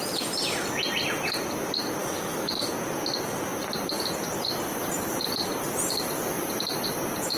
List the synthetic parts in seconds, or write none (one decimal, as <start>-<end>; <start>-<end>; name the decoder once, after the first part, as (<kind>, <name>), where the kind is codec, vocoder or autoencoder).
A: 2.0-2.7 (autoencoder, DAC-VAE)